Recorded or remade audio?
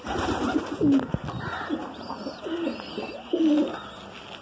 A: recorded